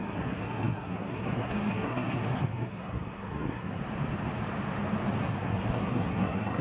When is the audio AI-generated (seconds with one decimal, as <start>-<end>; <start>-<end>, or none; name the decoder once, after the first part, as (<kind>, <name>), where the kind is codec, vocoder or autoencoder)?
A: 0.0-3.8 (codec, SNAC); 5.2-6.6